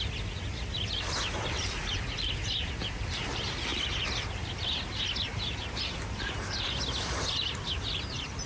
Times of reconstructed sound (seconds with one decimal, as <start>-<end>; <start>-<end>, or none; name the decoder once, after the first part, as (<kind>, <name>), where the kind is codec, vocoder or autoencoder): none